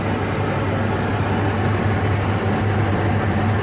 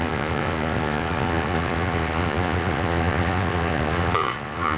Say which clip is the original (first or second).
first